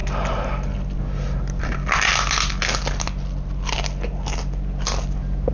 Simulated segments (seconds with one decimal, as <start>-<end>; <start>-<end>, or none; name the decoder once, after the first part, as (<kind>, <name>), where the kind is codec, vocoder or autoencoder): none